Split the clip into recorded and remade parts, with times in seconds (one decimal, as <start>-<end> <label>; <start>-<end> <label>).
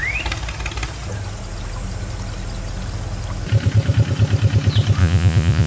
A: 0.0-5.0 recorded; 5.0-5.7 remade